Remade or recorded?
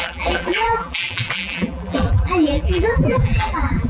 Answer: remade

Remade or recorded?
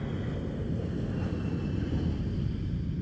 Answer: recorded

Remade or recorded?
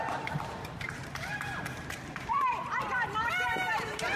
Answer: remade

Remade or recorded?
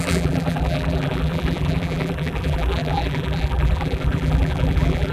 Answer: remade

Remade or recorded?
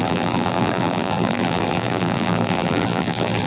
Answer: remade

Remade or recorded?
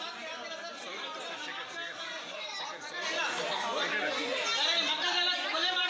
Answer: recorded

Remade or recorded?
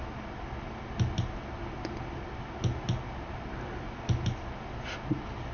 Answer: recorded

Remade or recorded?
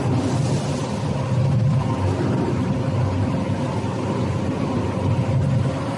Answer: recorded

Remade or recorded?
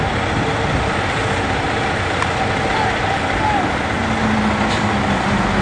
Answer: recorded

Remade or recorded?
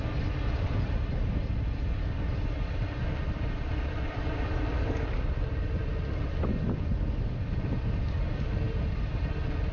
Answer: remade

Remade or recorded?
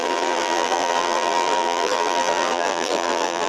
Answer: remade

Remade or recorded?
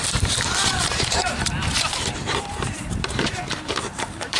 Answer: remade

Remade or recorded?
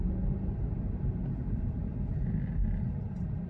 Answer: remade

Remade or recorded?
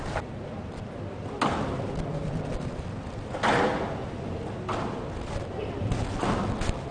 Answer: recorded